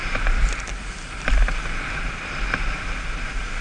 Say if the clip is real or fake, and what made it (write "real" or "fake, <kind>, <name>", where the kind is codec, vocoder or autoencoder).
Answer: real